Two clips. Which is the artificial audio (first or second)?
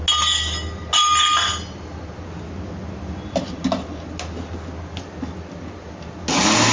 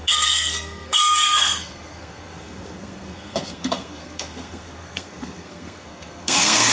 second